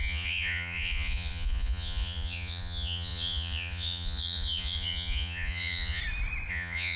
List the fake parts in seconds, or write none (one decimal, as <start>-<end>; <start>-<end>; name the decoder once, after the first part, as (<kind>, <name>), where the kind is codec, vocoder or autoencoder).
0.0-6.0 (vocoder, Vocos); 6.5-7.0